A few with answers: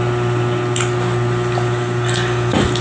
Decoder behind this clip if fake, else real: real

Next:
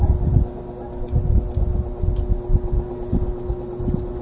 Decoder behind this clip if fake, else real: real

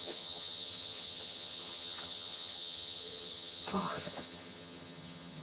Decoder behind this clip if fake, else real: fake, vocoder, HiFi-GAN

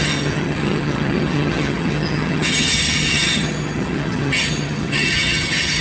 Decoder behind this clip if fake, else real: fake, vocoder, HiFi-GAN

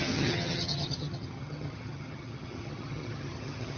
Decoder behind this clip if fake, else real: fake, vocoder, HiFi-GAN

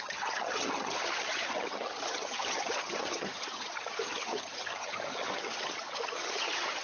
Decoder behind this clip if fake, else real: fake, vocoder, HiFi-GAN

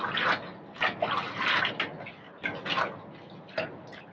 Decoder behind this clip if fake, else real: real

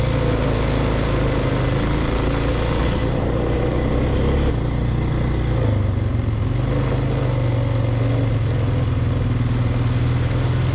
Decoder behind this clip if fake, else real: real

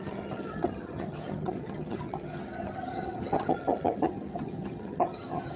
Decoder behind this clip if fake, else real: fake, vocoder, HiFi-GAN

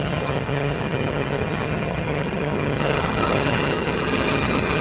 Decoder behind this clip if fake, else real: fake, vocoder, HiFi-GAN